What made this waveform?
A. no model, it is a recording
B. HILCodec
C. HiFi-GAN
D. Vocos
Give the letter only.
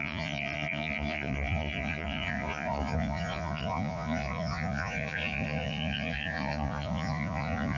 D